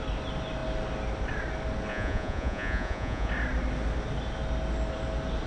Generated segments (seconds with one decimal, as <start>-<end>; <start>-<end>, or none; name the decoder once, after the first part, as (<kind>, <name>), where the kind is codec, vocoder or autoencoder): 1.9-3.3 (vocoder, Vocos)

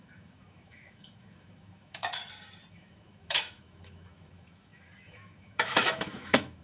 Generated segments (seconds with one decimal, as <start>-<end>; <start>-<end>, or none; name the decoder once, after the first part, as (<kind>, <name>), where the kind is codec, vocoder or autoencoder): 0.0-2.2 (autoencoder, DAC-VAE); 2.7-6.6

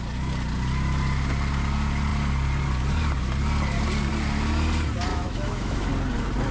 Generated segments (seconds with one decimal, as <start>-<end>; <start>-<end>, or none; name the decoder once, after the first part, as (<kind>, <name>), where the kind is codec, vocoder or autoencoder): 5.1-5.9 (autoencoder, DAC-VAE)

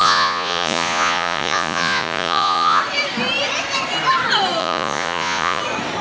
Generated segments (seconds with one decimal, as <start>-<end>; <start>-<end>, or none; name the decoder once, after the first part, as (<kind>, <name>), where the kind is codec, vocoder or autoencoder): 0.0-2.8 (vocoder, Vocos); 4.6-5.6

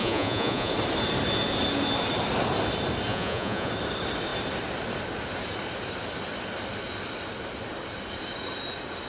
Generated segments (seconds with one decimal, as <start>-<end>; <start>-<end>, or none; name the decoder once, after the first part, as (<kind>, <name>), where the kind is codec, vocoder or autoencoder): 0.0-0.7 (vocoder, Vocos); 3.1-3.7

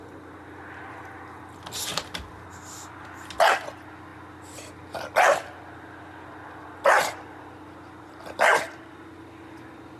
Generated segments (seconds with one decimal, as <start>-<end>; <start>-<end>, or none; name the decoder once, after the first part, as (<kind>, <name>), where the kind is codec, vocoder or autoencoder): none